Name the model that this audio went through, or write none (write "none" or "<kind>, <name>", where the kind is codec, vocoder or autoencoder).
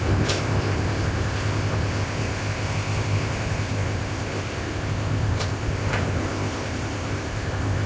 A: codec, ZipCodec